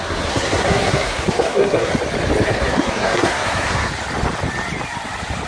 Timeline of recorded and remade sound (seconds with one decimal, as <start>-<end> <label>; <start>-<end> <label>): 0.0-1.9 remade; 1.9-2.5 recorded; 2.5-3.9 remade; 3.9-5.5 recorded